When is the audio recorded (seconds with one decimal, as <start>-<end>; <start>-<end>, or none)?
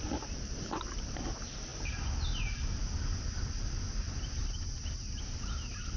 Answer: 0.0-6.0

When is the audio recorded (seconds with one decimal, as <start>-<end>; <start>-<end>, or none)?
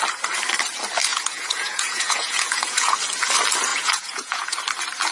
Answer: 0.0-1.1; 2.9-3.7; 4.6-5.1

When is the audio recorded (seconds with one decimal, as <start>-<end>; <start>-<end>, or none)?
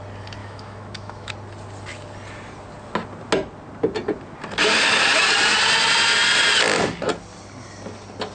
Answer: 0.0-0.4; 1.3-8.3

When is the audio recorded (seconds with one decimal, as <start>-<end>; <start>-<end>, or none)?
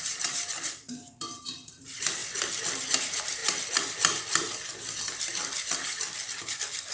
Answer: 2.2-2.9; 3.4-6.4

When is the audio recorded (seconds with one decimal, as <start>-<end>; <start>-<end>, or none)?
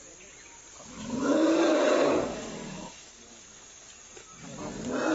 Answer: 0.0-1.2; 1.8-2.2; 4.6-5.1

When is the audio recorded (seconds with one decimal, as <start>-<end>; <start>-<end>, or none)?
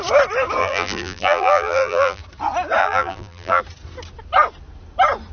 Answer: 0.0-0.6; 2.2-2.8; 3.6-5.3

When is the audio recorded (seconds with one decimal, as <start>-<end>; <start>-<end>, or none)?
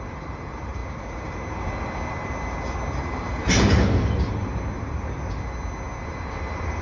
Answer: 0.0-6.8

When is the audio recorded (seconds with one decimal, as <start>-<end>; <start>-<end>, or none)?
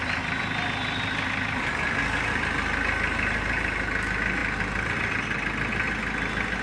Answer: 0.0-6.6